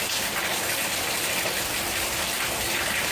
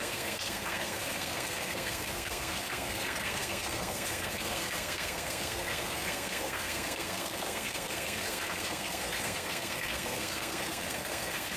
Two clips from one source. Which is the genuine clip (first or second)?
first